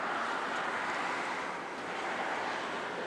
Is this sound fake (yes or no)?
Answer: no